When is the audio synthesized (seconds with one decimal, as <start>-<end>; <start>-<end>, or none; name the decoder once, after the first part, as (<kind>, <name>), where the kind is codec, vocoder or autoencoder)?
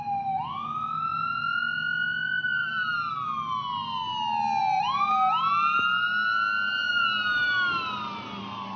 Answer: 2.6-3.1 (vocoder, BigVGAN v2); 4.6-5.1